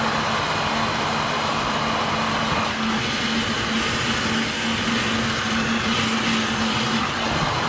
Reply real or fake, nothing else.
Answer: real